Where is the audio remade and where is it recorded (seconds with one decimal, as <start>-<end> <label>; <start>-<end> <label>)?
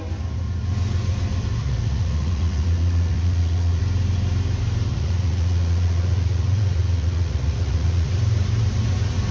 0.0-1.6 recorded; 1.6-3.8 remade; 3.8-4.9 recorded; 4.9-8.1 remade; 8.1-9.3 recorded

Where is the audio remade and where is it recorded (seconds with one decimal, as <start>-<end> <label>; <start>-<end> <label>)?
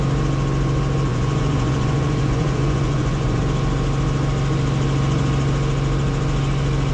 0.0-1.1 recorded; 1.1-3.4 remade; 3.4-6.9 recorded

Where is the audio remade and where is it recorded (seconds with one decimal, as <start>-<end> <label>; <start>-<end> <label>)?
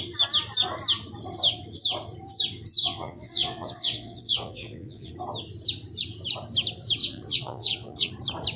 0.0-2.8 recorded; 2.8-5.1 remade; 5.1-7.0 recorded; 7.0-8.1 remade; 8.1-8.6 recorded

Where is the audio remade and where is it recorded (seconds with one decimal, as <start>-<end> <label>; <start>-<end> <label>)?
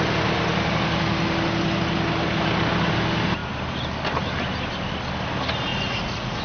0.0-5.7 recorded; 5.7-6.4 remade